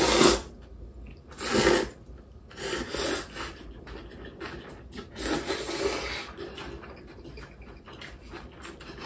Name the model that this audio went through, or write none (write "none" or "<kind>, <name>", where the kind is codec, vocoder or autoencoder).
none